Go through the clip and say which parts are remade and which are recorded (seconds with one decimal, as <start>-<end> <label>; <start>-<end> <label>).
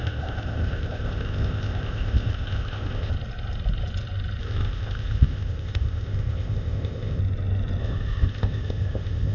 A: 0.0-3.1 remade; 3.1-4.4 recorded; 4.4-7.2 remade; 7.2-7.8 recorded; 7.8-9.3 remade